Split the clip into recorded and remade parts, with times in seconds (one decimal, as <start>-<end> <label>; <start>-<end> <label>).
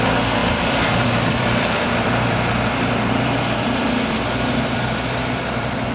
0.0-5.9 remade